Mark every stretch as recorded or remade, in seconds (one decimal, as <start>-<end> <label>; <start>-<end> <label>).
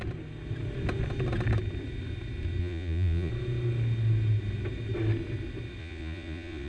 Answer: 0.0-2.6 recorded; 2.6-3.3 remade; 3.3-5.8 recorded; 5.8-6.7 remade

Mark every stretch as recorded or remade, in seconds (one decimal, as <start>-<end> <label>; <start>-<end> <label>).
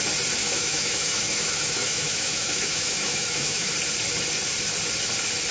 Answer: 0.0-0.4 recorded; 0.4-3.7 remade; 3.7-5.5 recorded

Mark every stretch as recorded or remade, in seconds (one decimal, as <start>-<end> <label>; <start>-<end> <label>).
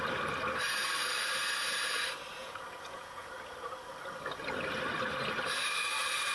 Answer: 0.0-2.4 recorded; 2.4-3.3 remade; 3.3-6.3 recorded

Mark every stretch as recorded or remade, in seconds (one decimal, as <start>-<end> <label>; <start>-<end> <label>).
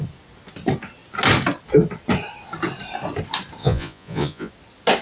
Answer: 0.0-3.6 recorded; 3.6-4.5 remade; 4.5-5.0 recorded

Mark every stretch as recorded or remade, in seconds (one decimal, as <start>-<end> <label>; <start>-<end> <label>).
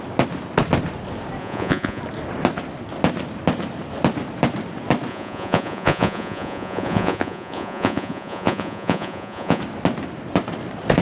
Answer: 0.0-1.4 recorded; 1.4-2.0 remade; 2.0-5.1 recorded; 5.1-9.6 remade; 9.6-11.0 recorded